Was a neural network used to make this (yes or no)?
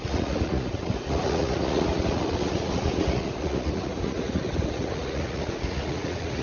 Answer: yes